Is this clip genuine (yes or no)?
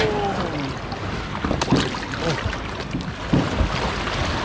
yes